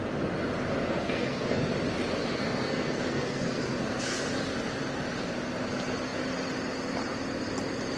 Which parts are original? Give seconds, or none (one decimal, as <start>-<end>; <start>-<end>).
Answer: 0.0-0.9; 1.7-2.2; 4.3-8.0